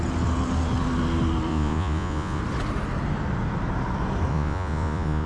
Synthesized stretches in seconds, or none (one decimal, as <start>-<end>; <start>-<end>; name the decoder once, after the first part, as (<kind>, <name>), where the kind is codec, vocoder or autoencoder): 1.5-2.4 (vocoder, Vocos); 4.3-5.3